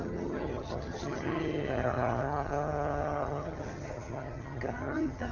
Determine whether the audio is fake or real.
fake